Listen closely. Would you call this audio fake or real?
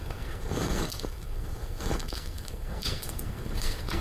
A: fake